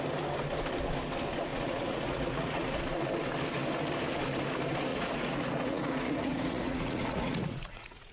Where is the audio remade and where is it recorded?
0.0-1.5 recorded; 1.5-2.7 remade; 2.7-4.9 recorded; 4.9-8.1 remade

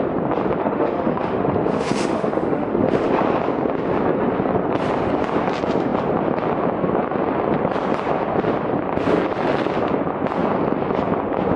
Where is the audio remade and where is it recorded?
0.0-0.6 recorded; 0.6-3.1 remade; 3.1-11.6 recorded

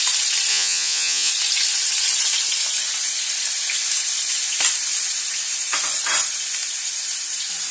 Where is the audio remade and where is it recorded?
0.0-0.5 recorded; 0.5-1.3 remade; 1.3-7.7 recorded

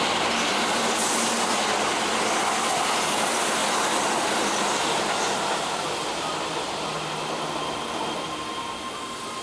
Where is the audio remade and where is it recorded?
0.0-9.4 recorded

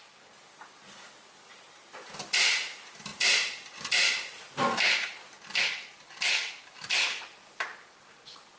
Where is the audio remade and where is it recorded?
0.0-3.1 recorded; 3.1-5.6 remade; 5.6-8.6 recorded

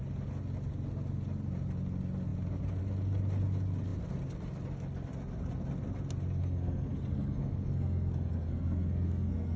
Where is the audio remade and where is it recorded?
0.0-6.4 recorded; 6.4-9.6 remade

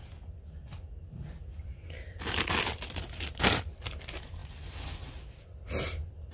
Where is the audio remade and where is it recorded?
0.0-6.3 recorded

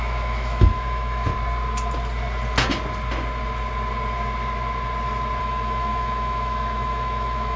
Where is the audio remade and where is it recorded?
0.0-1.3 remade; 1.3-5.4 recorded; 5.4-7.6 remade